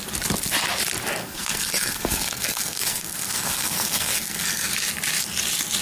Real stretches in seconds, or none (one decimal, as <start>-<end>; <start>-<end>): 0.0-1.2; 4.7-5.8